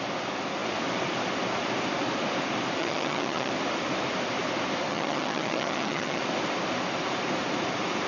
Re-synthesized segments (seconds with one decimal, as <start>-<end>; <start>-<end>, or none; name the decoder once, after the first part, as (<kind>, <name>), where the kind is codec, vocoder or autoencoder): 2.8-3.5 (vocoder, HiFi-GAN); 4.9-6.2